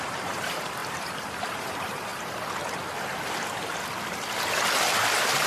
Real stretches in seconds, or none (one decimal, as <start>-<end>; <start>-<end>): 2.1-5.5